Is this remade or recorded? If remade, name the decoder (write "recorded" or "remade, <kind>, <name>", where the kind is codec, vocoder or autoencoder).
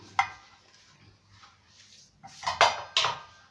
recorded